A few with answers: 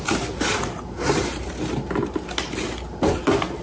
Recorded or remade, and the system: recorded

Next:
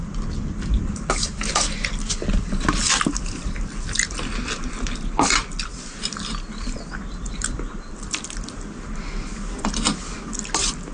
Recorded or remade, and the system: recorded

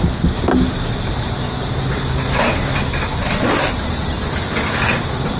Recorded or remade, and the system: recorded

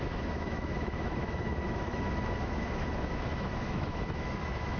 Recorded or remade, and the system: remade, autoencoder, DAC-VAE